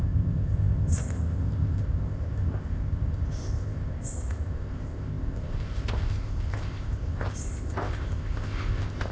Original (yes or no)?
no